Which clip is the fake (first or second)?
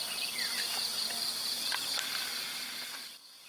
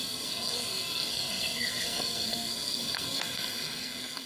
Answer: second